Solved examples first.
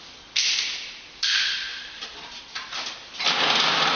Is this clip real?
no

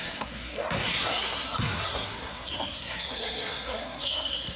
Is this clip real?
no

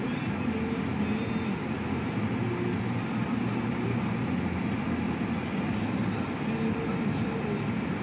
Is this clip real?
yes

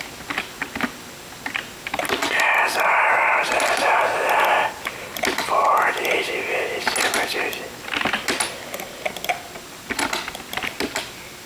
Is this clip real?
yes